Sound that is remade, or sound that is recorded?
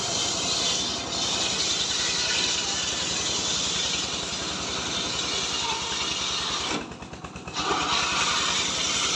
recorded